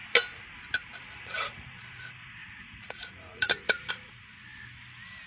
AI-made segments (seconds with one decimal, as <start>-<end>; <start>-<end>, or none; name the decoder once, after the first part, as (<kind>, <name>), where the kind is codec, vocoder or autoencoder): 1.0-4.3 (vocoder, Vocos)